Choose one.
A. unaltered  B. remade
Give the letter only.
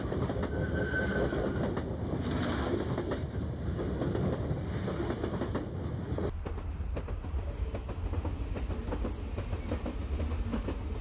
A